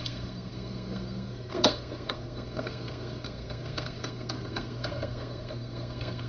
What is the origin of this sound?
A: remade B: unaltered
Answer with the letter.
A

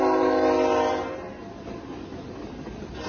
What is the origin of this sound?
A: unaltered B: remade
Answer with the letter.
A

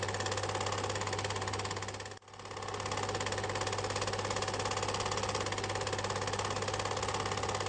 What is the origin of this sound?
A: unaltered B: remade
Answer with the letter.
A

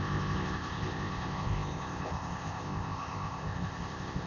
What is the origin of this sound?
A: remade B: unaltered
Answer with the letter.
A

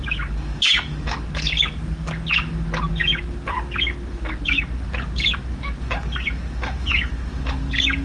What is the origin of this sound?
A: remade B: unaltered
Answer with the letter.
A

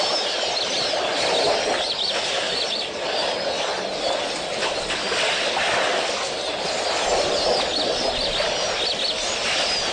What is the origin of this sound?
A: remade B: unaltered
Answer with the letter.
B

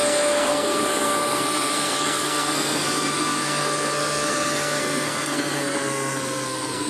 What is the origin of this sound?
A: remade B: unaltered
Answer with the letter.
A